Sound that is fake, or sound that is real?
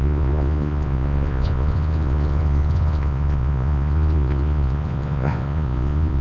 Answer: fake